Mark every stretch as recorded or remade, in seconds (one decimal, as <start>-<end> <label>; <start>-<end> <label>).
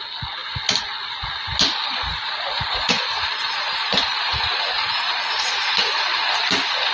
0.0-2.1 recorded; 2.1-6.0 remade; 6.0-6.9 recorded